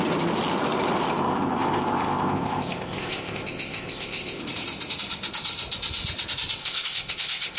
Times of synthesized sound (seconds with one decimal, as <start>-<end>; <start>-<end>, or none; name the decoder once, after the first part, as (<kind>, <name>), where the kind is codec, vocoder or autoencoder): 1.2-4.4 (codec, ZipCodec); 6.6-7.6